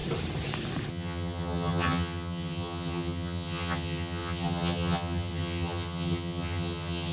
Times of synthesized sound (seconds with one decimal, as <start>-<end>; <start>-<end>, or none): 0.9-7.1